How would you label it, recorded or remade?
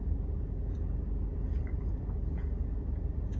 recorded